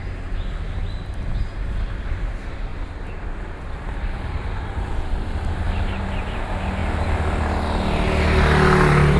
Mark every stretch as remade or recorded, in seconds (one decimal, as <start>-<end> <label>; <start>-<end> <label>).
0.0-2.7 recorded; 2.7-6.0 remade; 6.0-9.2 recorded